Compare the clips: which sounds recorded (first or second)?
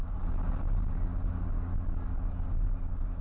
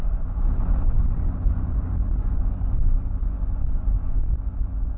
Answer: first